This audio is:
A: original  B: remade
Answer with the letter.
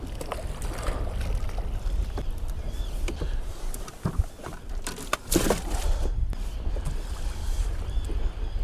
A